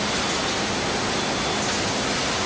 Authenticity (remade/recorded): recorded